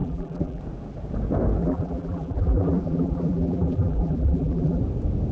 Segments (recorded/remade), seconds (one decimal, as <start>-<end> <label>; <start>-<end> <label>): 0.0-0.6 remade; 0.6-1.6 recorded; 1.6-4.8 remade; 4.8-5.3 recorded